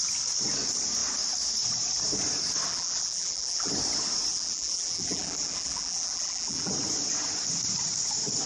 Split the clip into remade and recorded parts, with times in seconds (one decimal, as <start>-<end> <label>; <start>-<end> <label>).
0.0-2.7 recorded; 2.7-3.7 remade; 3.7-4.3 recorded; 4.3-6.7 remade; 6.7-8.5 recorded